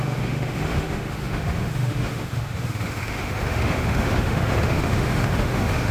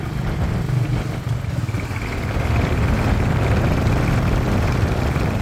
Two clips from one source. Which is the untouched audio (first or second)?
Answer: second